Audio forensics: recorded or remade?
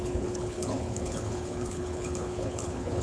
remade